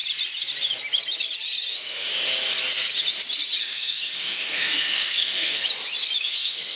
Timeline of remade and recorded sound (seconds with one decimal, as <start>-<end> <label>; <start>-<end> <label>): 0.0-1.7 recorded; 1.7-2.1 remade; 2.1-3.6 recorded; 3.6-5.6 remade; 5.6-6.2 recorded; 6.2-6.8 remade